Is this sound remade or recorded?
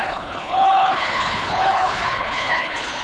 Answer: remade